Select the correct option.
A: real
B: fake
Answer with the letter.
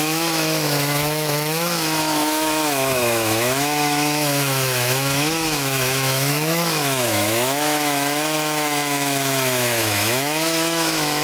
B